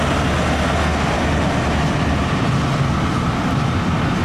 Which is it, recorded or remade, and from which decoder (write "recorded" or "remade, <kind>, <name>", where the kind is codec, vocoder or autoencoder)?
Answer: recorded